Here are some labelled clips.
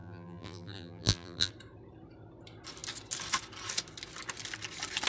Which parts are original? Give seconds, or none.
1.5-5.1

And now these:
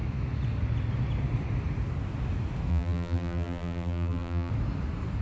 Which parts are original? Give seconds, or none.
0.0-2.7; 4.5-5.2

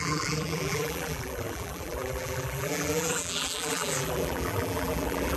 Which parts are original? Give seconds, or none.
none